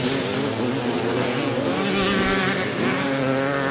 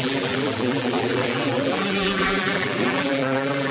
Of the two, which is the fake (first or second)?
second